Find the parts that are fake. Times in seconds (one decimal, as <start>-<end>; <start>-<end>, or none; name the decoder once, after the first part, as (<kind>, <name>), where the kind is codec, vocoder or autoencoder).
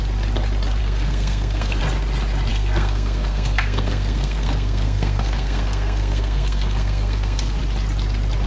0.8-1.8 (codec, SNAC); 2.5-7.6